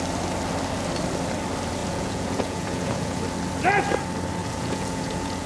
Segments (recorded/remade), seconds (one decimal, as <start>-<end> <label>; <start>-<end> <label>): 0.0-1.8 recorded; 1.8-3.2 remade; 3.2-4.4 recorded; 4.4-5.5 remade